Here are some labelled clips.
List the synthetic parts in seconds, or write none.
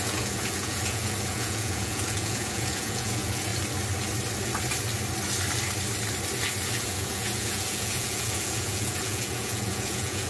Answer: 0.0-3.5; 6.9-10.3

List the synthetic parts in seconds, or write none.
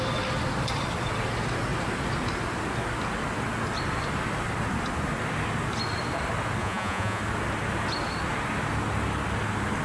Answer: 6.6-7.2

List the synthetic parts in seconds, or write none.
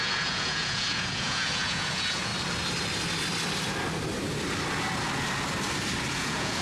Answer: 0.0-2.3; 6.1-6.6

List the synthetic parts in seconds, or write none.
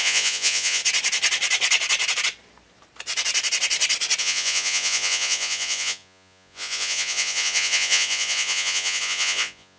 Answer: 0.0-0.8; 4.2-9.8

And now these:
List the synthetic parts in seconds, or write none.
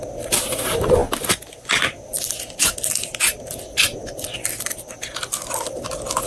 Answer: none